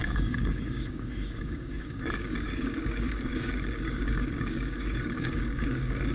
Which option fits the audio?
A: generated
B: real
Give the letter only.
A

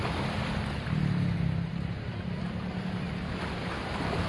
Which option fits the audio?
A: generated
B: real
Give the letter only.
B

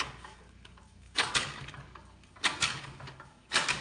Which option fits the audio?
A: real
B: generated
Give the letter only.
B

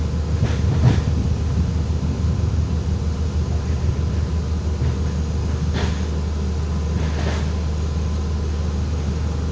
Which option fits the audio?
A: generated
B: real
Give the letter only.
B